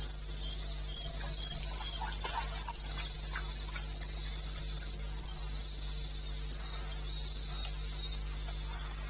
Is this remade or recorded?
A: recorded